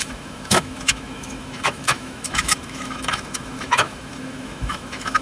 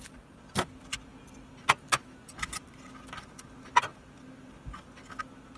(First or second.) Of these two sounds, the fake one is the first